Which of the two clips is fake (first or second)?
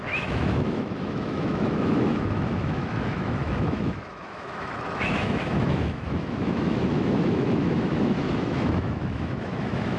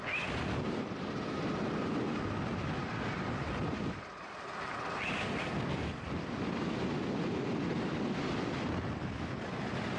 first